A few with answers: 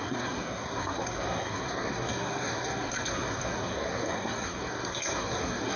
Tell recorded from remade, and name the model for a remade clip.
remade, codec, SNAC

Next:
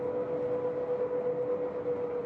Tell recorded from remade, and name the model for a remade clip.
recorded